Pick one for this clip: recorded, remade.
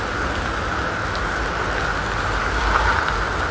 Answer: recorded